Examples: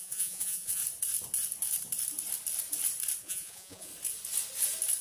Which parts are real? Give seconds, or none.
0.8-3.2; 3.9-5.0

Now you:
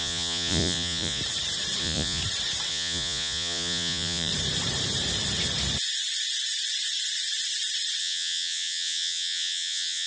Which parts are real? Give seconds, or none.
1.2-1.8; 2.2-2.7; 4.3-8.0

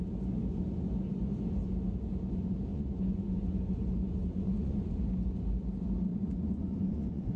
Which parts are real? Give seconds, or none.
0.0-2.7; 3.7-4.2; 4.9-6.1

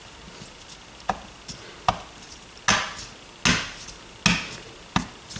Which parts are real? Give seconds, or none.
0.0-5.4

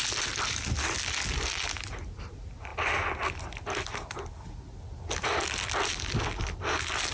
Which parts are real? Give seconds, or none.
0.0-7.1

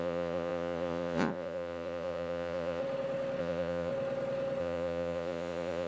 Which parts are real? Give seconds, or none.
2.8-3.4; 3.9-4.6